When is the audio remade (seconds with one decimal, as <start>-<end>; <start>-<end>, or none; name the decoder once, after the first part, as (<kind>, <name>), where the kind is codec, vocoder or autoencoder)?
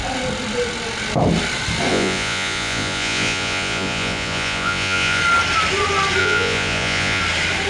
1.9-5.2 (vocoder, Vocos); 6.2-7.2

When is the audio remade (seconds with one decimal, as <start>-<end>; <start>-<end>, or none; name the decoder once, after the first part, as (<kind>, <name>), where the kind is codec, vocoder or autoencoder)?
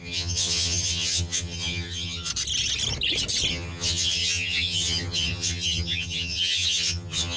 0.0-2.3 (vocoder, HiFi-GAN); 3.5-7.4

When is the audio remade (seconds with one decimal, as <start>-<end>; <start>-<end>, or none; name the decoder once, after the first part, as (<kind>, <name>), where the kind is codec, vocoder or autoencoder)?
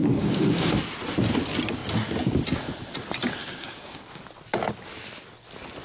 0.0-0.8 (codec, DAC); 3.4-4.2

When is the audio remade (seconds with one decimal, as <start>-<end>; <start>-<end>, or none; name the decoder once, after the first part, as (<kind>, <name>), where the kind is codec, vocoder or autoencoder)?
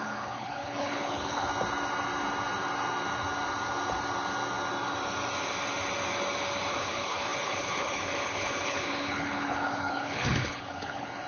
0.0-1.5 (codec, HILCodec); 6.7-11.3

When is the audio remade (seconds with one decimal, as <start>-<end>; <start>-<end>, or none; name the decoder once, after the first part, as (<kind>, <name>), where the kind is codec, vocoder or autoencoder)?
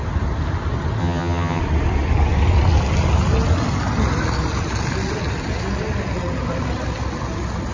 1.0-1.6 (vocoder, HiFi-GAN)